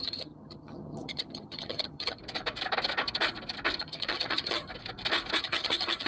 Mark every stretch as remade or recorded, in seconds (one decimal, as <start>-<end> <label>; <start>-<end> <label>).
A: 0.0-2.2 remade; 2.2-3.8 recorded; 3.8-4.7 remade; 4.7-5.4 recorded; 5.4-6.1 remade